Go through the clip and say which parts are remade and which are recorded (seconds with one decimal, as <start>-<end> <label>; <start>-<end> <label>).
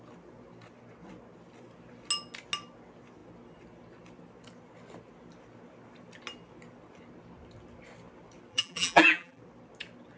0.0-8.5 recorded; 8.5-9.4 remade; 9.4-10.2 recorded